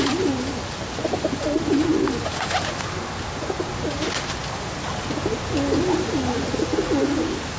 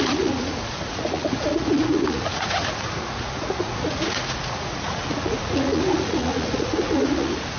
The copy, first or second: second